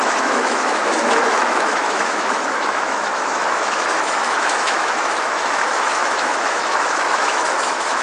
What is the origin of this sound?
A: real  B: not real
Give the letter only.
B